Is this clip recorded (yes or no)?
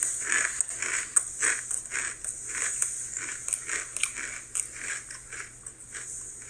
yes